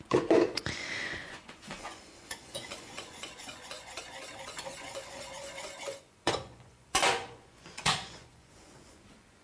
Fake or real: fake